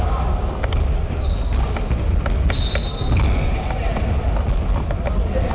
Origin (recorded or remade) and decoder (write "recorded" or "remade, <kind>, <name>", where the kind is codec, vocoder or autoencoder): recorded